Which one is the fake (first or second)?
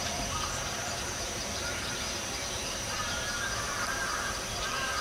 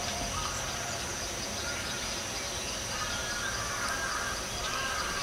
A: first